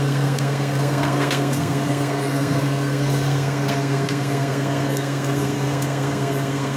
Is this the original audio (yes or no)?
no